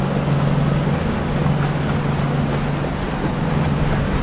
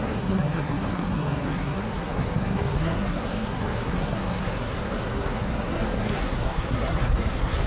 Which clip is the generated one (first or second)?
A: second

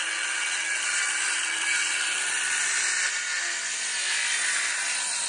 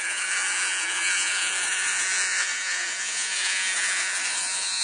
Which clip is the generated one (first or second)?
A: second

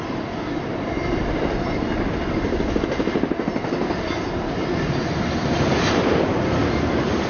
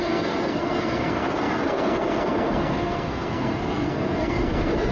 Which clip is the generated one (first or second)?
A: second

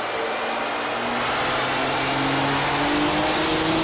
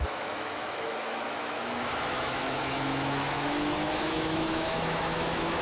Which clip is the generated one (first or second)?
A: second